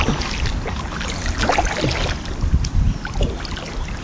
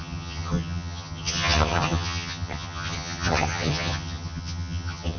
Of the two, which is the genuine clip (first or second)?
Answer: first